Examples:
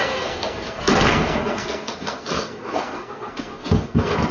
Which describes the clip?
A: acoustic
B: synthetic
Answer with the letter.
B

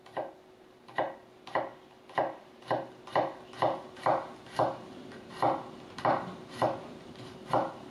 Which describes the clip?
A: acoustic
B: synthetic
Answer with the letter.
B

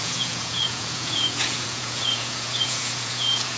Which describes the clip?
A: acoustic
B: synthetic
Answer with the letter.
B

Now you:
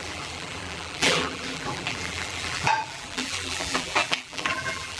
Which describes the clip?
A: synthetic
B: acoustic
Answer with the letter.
A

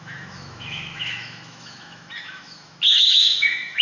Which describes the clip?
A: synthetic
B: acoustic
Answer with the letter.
A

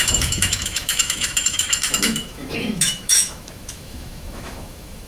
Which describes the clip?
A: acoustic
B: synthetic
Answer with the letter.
B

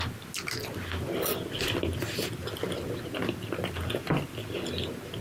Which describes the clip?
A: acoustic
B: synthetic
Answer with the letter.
A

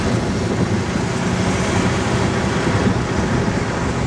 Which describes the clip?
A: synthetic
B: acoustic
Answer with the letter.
B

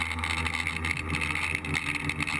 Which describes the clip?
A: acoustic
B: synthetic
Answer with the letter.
A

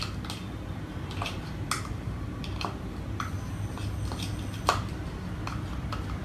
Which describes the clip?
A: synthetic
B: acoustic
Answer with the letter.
B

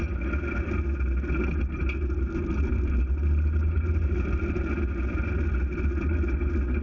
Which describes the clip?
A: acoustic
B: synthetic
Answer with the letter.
A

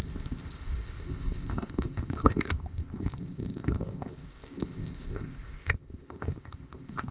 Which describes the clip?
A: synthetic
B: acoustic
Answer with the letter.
A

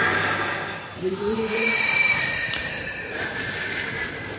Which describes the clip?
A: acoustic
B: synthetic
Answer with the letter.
B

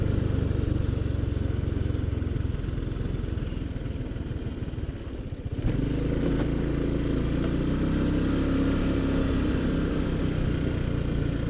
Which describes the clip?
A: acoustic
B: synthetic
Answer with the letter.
A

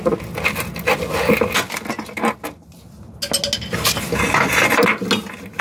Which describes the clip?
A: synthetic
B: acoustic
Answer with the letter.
B